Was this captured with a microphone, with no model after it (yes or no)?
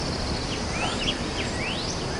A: yes